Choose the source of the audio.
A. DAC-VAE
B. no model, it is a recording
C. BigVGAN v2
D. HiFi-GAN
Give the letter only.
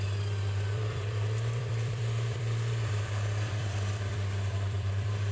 C